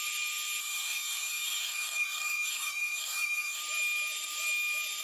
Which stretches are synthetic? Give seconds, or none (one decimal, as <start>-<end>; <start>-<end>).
0.6-3.6